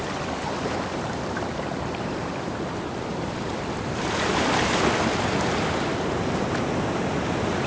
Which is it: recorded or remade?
remade